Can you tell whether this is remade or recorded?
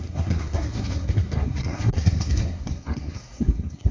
remade